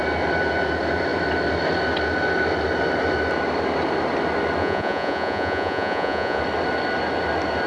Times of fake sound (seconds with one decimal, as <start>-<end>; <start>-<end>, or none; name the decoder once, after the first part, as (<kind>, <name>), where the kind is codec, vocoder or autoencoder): 4.6-6.4 (vocoder, Vocos)